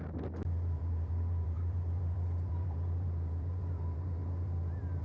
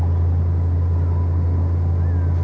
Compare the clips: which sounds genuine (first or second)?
second